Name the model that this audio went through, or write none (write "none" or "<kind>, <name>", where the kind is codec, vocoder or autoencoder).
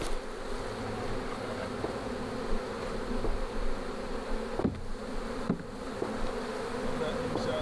none